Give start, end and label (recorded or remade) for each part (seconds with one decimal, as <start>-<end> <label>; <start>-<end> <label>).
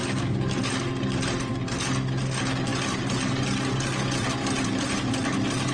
0.0-5.7 recorded